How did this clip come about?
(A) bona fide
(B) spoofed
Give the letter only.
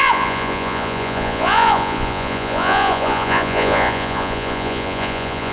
B